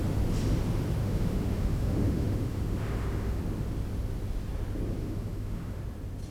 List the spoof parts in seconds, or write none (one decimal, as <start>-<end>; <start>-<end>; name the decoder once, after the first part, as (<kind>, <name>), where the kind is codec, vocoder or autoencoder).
1.0-3.4 (autoencoder, DAC-VAE); 5.0-5.8